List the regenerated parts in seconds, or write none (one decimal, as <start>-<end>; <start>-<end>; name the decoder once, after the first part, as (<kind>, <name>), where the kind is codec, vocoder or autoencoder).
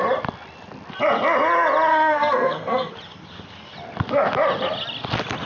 1.9-2.9 (codec, SNAC)